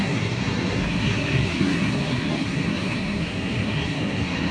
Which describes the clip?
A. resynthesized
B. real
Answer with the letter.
A